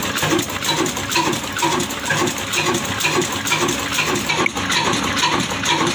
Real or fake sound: real